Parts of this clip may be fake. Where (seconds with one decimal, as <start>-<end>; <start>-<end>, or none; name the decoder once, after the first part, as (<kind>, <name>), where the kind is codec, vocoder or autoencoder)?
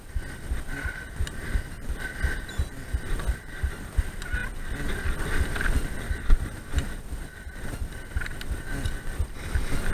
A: none